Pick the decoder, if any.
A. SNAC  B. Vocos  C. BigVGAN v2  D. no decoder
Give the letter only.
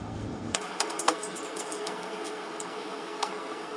A